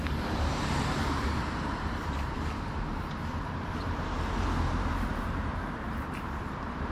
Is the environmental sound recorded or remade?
remade